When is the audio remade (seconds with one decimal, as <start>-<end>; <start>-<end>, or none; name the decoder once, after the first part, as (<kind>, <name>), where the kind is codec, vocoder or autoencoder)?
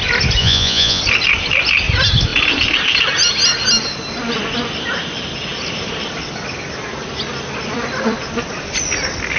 0.4-1.0 (vocoder, Vocos)